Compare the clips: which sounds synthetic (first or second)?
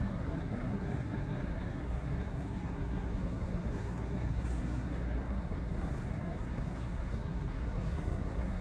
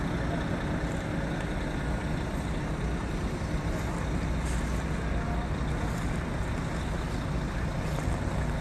first